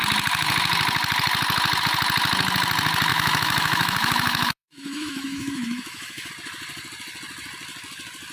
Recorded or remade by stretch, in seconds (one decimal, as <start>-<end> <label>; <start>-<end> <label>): 0.0-3.1 recorded; 3.1-6.3 remade; 6.3-8.3 recorded